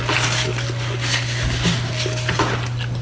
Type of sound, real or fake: real